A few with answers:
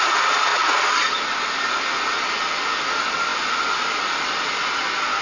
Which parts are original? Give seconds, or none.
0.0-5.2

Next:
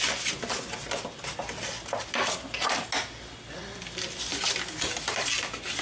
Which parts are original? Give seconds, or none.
0.0-5.8

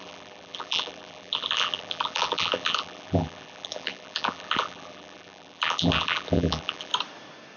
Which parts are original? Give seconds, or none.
6.9-7.6